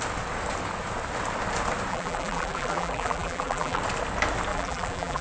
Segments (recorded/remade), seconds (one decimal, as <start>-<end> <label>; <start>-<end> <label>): 0.0-1.9 recorded; 1.9-3.8 remade; 3.8-4.5 recorded; 4.5-5.2 remade

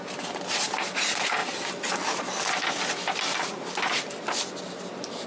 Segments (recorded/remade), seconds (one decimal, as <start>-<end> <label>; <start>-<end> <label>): 0.0-5.3 recorded

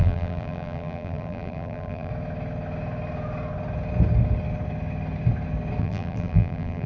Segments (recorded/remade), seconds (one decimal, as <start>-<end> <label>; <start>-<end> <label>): 0.0-2.1 remade; 2.1-5.8 recorded; 5.8-6.9 remade

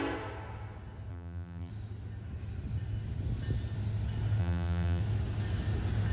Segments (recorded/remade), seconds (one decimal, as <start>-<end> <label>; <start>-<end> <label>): 0.0-1.1 recorded; 1.1-1.7 remade; 1.7-4.4 recorded; 4.4-5.0 remade; 5.0-6.1 recorded

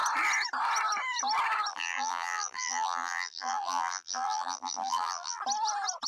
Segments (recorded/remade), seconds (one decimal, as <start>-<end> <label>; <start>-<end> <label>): 0.0-1.7 recorded; 1.7-5.4 remade; 5.4-6.1 recorded

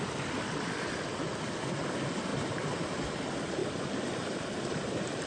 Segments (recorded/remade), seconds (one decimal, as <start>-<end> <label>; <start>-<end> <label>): 0.0-2.3 recorded; 2.3-3.0 remade; 3.0-3.6 recorded; 3.6-5.3 remade

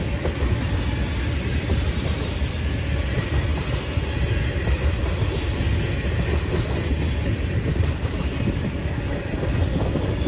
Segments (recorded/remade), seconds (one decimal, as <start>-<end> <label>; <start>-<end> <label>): 0.0-10.3 recorded